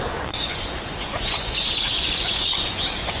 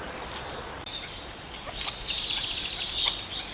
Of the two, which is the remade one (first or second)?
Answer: first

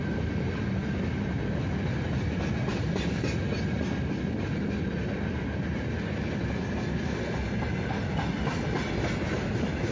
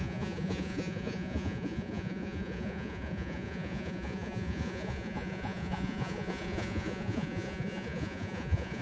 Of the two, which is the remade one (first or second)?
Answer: second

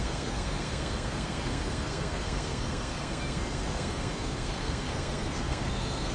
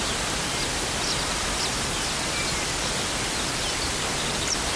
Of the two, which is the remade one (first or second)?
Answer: first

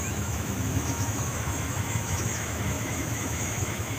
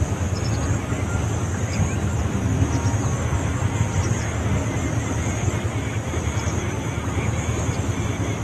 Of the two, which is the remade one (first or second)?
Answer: first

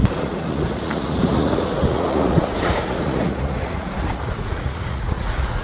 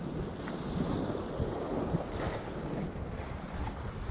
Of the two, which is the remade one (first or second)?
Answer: first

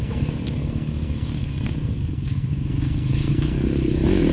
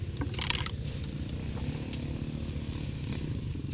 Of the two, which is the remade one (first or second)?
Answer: first